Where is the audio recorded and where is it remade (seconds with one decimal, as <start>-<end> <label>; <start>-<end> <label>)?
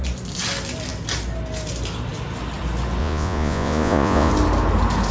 0.0-3.0 recorded; 3.0-4.3 remade; 4.3-5.1 recorded